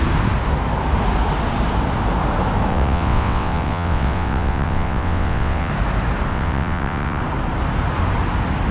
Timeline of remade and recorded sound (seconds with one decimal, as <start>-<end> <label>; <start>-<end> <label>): 0.0-2.7 recorded; 2.7-5.7 remade; 5.7-6.3 recorded; 6.3-7.2 remade; 7.2-8.7 recorded